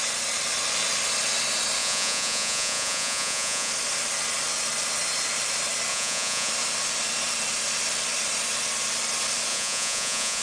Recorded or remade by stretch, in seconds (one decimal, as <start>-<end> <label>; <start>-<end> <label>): 0.0-1.8 recorded; 1.8-3.7 remade; 3.7-5.9 recorded; 5.9-6.5 remade; 6.5-9.5 recorded; 9.5-10.4 remade